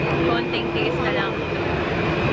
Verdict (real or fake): fake